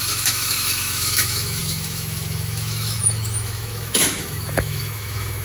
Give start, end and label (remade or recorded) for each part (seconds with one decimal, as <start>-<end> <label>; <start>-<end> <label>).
0.0-5.4 remade